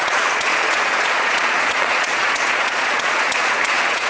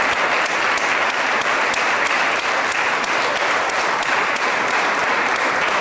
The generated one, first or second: first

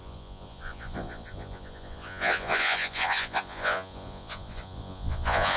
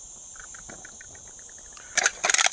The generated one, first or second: first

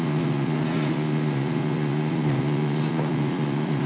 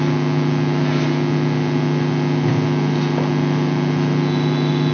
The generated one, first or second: first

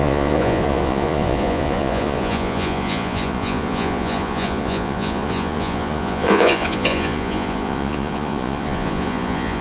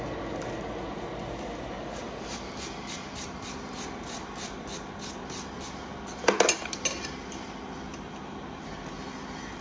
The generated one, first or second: first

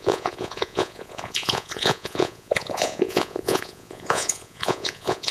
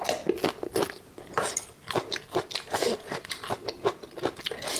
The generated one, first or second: first